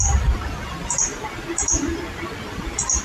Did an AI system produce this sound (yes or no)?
no